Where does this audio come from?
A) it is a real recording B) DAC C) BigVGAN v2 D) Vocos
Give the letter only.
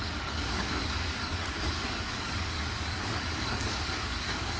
B